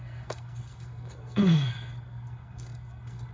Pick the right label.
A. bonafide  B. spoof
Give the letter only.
B